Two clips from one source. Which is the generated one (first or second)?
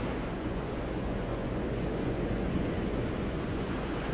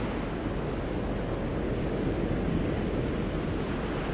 first